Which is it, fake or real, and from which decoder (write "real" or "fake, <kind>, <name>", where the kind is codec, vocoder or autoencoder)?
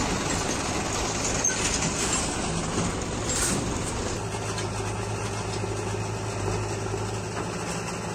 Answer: real